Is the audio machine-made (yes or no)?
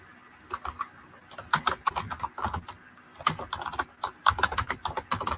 no